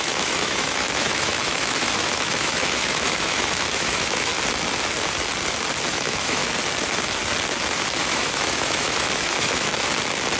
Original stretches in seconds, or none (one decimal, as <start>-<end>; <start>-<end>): 4.3-5.9; 6.4-8.0; 9.7-10.4